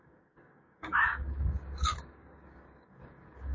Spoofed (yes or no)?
yes